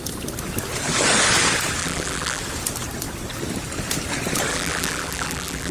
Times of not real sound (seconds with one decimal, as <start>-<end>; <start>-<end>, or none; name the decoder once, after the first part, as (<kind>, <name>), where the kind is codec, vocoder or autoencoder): 1.8-2.4 (vocoder, BigVGAN v2); 4.5-5.7